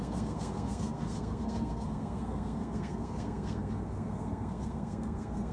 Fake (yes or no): yes